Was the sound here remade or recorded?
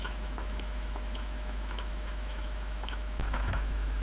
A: remade